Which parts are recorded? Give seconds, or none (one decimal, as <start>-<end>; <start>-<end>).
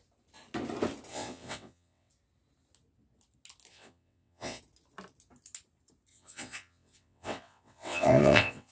0.0-1.1; 2.1-3.7; 4.6-6.1